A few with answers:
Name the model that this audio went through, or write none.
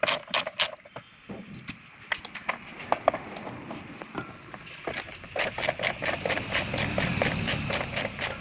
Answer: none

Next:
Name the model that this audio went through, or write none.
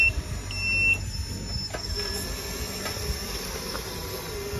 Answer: none